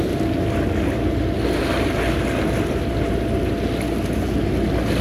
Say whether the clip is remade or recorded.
recorded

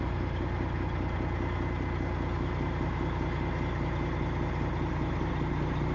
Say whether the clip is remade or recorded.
recorded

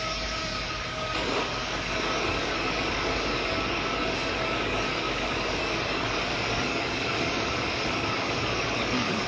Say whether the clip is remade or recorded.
remade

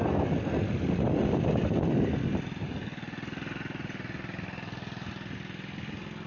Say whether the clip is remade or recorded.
recorded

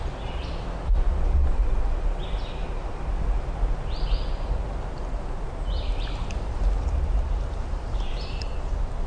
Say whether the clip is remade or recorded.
recorded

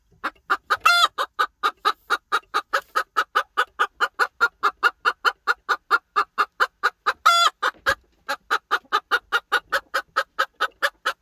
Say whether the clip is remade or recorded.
recorded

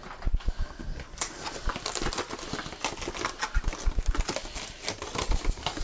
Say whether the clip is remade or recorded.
recorded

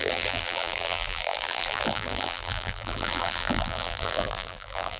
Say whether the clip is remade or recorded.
remade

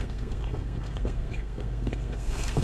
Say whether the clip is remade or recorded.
remade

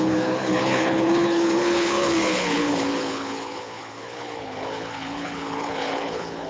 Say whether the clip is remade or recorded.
remade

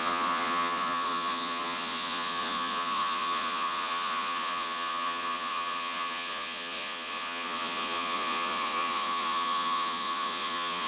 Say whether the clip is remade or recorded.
remade